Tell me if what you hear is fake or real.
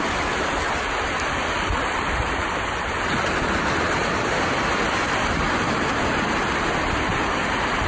fake